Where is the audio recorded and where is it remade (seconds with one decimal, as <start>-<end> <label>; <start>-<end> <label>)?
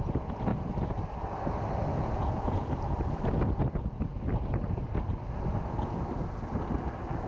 0.0-1.9 recorded; 1.9-2.7 remade; 2.7-7.3 recorded